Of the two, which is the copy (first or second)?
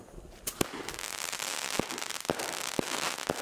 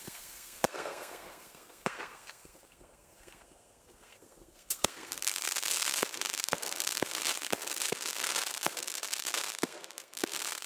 second